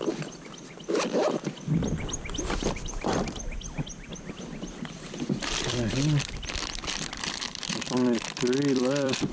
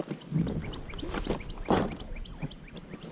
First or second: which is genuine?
second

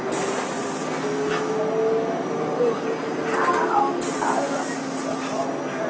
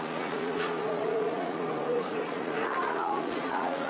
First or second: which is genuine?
first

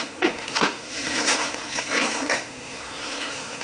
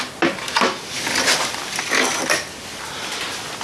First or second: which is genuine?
second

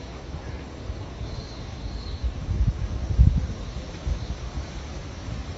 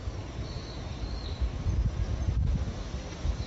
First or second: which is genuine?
second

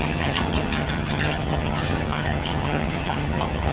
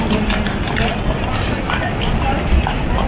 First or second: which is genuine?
second